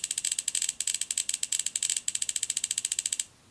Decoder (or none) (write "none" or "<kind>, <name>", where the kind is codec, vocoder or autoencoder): none